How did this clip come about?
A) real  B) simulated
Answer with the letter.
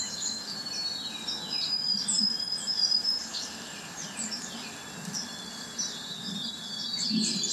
B